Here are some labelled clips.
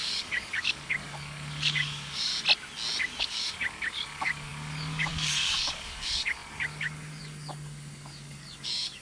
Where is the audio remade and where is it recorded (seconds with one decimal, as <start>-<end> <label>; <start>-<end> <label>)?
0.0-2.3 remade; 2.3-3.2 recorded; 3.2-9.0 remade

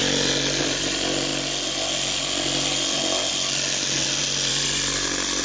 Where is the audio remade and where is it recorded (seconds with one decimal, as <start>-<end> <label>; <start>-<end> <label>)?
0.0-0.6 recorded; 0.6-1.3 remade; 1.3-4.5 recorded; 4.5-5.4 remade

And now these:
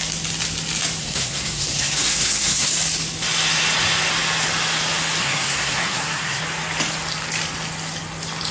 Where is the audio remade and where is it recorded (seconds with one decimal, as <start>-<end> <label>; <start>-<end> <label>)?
0.0-1.0 recorded; 1.0-2.7 remade; 2.7-5.2 recorded; 5.2-6.4 remade; 6.4-8.5 recorded